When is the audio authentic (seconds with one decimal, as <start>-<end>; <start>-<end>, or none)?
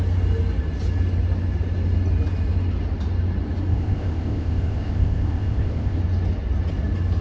0.0-3.7; 6.0-7.2